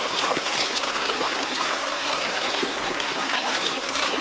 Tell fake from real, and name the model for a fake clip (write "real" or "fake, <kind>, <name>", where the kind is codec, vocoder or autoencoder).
fake, codec, SNAC